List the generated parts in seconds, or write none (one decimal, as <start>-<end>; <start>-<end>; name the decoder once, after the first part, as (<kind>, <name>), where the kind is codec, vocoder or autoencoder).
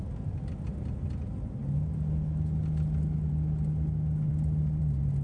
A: none